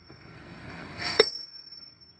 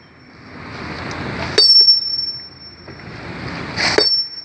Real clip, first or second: second